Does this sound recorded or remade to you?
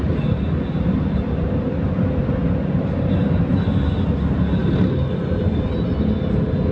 recorded